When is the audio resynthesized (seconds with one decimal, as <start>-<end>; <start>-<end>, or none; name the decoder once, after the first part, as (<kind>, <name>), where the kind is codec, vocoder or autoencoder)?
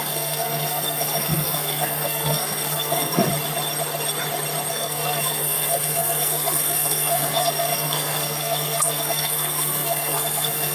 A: 0.0-3.3 (codec, SNAC); 4.7-10.7